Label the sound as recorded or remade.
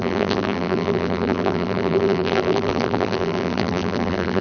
remade